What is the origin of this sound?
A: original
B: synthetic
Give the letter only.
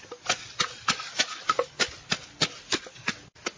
A